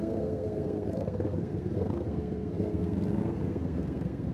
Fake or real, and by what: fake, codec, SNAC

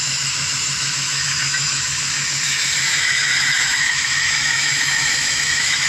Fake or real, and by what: fake, autoencoder, DAC-VAE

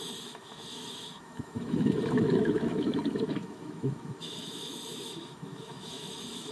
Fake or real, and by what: fake, autoencoder, DAC-VAE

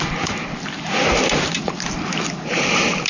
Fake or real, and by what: real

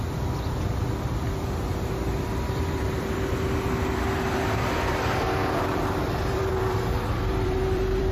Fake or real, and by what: fake, vocoder, BigVGAN v2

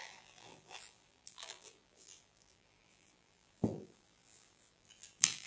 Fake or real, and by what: fake, vocoder, BigVGAN v2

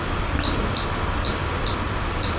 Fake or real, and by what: real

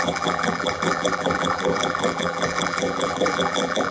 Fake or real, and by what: fake, vocoder, BigVGAN v2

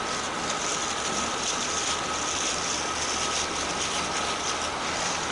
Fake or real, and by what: real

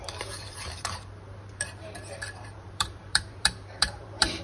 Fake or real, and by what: fake, vocoder, BigVGAN v2